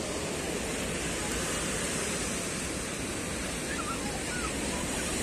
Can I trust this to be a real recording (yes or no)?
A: yes